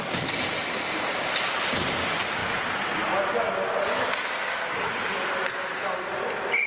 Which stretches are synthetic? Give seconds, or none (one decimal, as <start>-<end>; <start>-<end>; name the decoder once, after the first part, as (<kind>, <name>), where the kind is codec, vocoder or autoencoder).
none